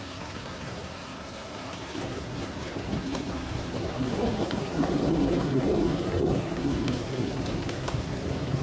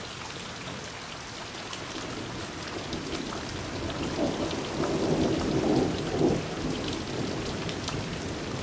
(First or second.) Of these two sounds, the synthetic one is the first